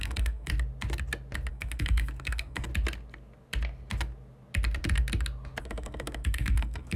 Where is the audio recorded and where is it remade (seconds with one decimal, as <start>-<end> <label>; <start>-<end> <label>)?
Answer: 0.0-0.5 remade; 0.5-1.5 recorded; 1.5-2.7 remade; 2.7-5.6 recorded; 5.6-7.0 remade